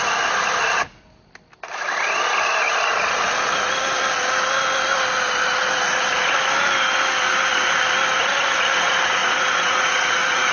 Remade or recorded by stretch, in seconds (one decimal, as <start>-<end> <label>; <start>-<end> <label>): 0.0-9.2 recorded; 9.2-10.5 remade